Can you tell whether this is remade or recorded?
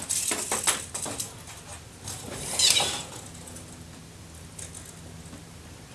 recorded